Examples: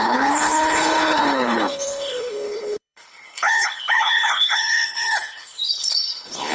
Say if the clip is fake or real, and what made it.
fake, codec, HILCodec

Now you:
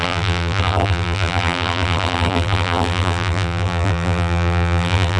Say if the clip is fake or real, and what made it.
fake, vocoder, BigVGAN v2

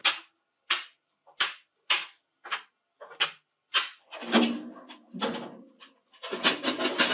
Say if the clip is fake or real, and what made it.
real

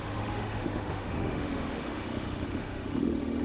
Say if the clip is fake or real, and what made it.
fake, autoencoder, DAC-VAE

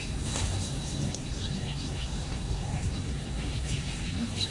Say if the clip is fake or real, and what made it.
fake, codec, SNAC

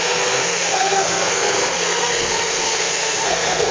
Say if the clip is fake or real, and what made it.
fake, codec, SNAC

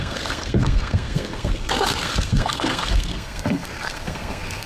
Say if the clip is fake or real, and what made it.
fake, codec, SNAC